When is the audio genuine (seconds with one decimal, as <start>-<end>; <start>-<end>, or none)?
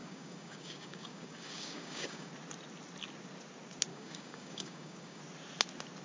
2.3-3.9; 5.2-6.0